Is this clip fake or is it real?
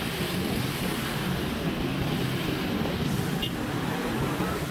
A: real